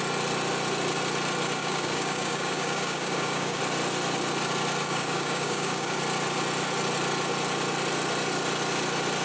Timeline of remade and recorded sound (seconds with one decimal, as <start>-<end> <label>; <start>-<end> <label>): 0.0-1.6 recorded; 1.6-3.6 remade; 3.6-4.8 recorded; 4.8-6.0 remade; 6.0-9.2 recorded